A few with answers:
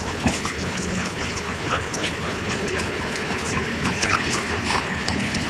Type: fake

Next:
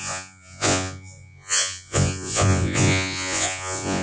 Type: fake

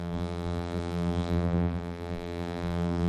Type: fake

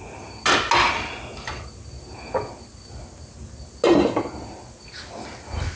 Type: real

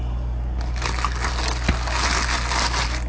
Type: real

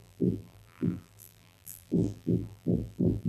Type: fake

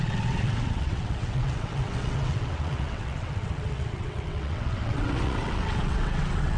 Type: fake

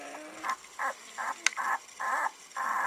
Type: real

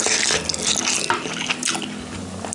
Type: real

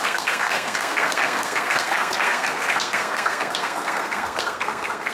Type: fake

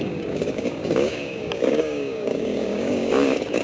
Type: fake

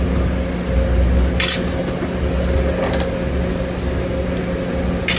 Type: real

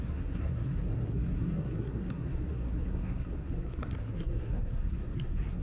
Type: fake